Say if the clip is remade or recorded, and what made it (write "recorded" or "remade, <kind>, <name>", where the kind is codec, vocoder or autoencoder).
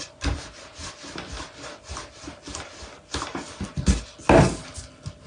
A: recorded